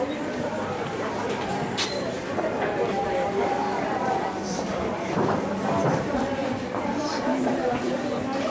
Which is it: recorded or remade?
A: remade